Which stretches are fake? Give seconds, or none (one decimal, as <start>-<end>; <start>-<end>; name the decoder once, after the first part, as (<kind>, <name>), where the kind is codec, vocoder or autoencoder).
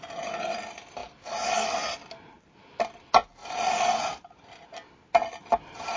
none